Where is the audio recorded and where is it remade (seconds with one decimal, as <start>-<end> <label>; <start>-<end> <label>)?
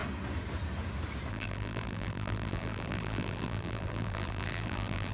0.0-1.3 recorded; 1.3-5.1 remade